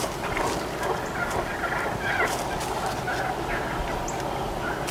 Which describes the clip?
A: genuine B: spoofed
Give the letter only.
A